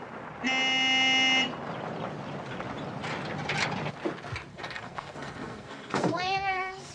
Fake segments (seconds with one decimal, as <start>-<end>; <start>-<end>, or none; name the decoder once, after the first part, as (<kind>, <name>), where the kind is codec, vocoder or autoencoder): 4.5-6.9 (codec, SNAC)

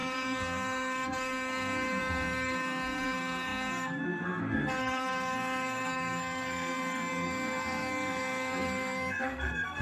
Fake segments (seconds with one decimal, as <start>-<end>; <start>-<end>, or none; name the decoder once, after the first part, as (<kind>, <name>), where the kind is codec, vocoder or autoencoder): 0.0-9.8 (codec, SNAC)